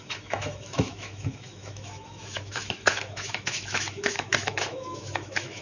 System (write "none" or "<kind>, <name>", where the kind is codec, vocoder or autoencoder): autoencoder, DAC-VAE